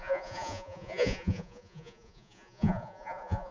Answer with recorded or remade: remade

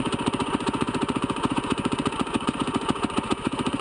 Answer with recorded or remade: remade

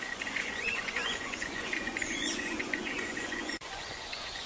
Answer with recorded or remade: remade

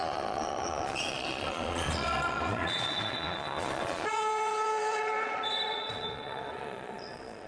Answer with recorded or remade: remade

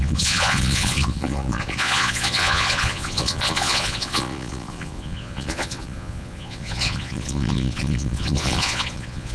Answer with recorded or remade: remade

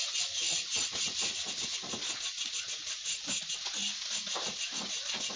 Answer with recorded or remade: recorded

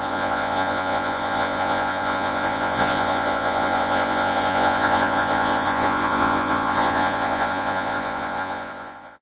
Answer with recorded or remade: remade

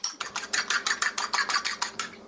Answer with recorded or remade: recorded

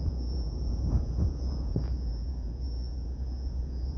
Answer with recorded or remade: remade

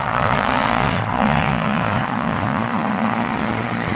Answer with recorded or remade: remade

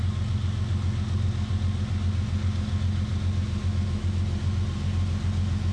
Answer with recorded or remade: recorded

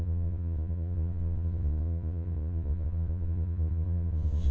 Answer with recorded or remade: remade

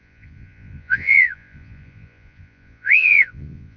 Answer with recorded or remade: remade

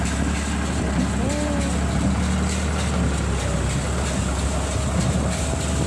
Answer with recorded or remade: recorded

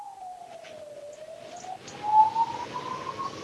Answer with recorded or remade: recorded